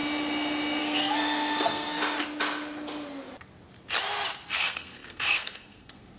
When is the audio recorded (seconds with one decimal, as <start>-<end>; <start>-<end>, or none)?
0.0-0.8; 2.0-4.5